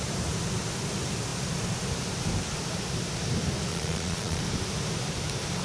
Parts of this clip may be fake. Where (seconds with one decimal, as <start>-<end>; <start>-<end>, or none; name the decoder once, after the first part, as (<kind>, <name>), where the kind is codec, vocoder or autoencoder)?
3.7-4.4 (vocoder, Vocos)